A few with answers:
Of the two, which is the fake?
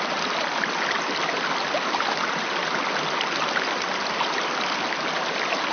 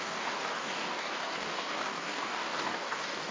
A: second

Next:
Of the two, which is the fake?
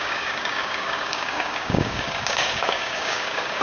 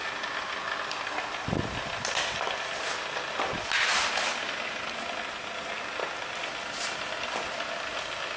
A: first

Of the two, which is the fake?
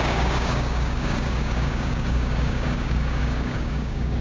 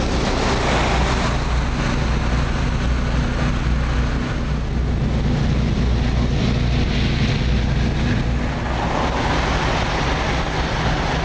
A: first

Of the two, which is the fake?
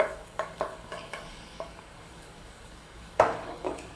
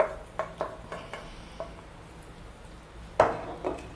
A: first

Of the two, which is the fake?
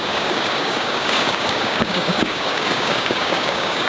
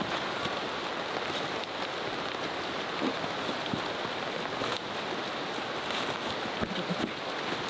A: first